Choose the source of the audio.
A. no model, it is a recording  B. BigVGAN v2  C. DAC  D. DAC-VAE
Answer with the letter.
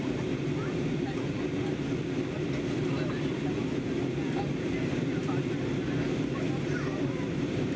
B